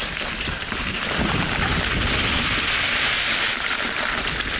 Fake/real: real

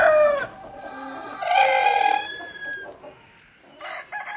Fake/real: real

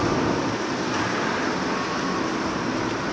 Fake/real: real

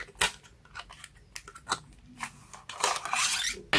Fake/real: real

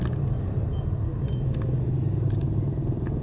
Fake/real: real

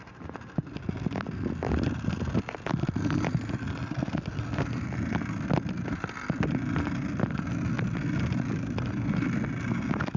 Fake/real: real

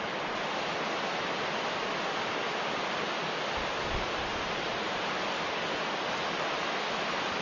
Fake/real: real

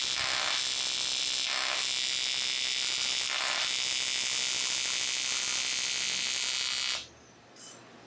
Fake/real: real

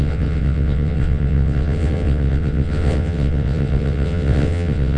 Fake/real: fake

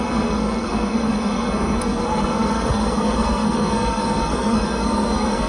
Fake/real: fake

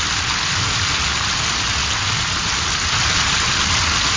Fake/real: real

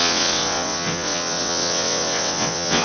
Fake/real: fake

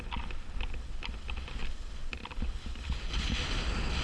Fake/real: real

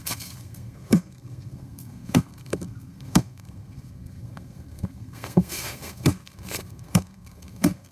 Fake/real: fake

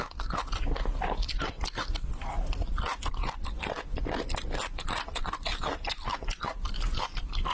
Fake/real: real